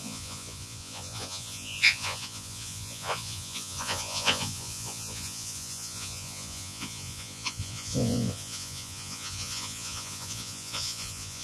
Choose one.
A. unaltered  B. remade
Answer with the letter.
B